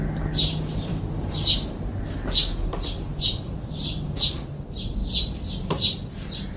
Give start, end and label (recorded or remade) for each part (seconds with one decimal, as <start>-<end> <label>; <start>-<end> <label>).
0.0-6.6 recorded

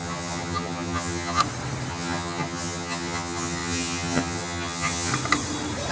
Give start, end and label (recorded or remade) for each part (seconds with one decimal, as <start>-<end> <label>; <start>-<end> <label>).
0.0-1.4 remade; 1.4-1.9 recorded; 1.9-5.1 remade; 5.1-5.9 recorded

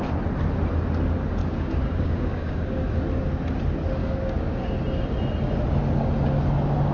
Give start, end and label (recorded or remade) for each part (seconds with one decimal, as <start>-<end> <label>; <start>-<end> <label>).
0.0-1.4 recorded; 1.4-2.8 remade; 2.8-4.0 recorded; 4.0-4.7 remade; 4.7-6.9 recorded

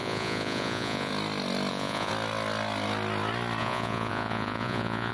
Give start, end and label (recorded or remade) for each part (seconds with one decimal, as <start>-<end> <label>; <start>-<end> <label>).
0.0-1.1 remade; 1.1-1.7 recorded; 1.7-2.1 remade; 2.1-3.6 recorded; 3.6-5.1 remade

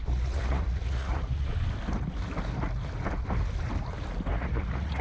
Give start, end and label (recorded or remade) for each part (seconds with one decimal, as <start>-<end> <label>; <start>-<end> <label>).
0.0-1.5 remade; 1.5-4.3 recorded; 4.3-5.0 remade

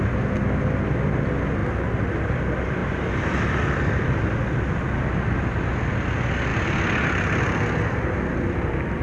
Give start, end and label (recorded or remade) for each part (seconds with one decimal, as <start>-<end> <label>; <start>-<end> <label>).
0.0-9.0 recorded